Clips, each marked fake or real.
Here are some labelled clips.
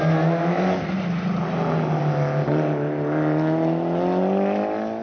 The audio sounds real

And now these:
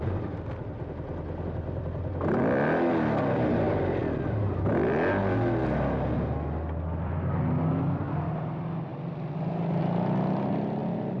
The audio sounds real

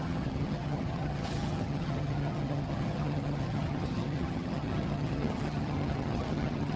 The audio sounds fake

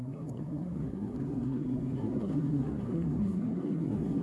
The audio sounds fake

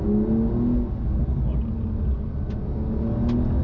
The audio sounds real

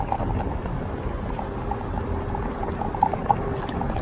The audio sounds real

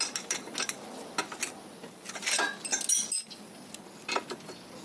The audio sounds real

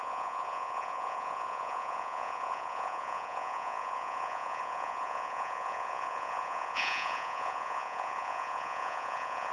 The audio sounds fake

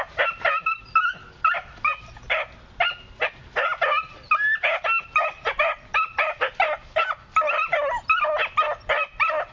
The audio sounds real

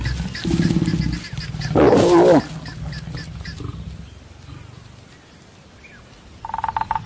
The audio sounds real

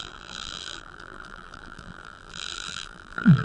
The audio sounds fake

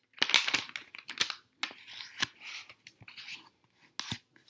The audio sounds real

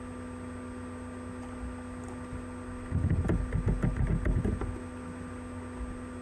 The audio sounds real